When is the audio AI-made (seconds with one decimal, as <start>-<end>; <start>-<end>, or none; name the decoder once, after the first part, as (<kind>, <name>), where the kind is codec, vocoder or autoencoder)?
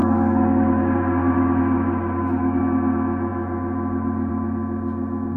0.0-2.6 (autoencoder, DAC-VAE)